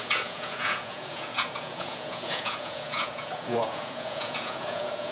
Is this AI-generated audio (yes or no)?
yes